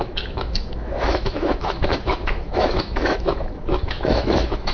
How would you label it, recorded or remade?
remade